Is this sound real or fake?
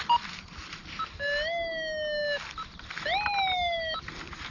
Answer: real